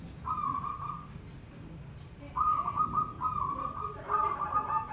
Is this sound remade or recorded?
recorded